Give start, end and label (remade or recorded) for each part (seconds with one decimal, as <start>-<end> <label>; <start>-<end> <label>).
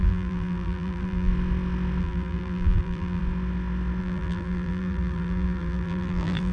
0.0-1.3 remade; 1.3-2.0 recorded; 2.0-3.2 remade; 3.2-4.0 recorded; 4.0-6.5 remade